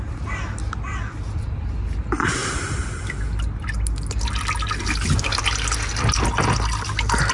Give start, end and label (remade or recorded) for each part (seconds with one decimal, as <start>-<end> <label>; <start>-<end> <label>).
0.0-7.3 recorded